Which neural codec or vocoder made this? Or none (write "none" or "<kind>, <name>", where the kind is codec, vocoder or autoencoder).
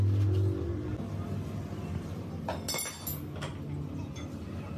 none